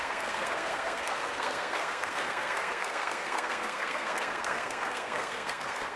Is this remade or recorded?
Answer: remade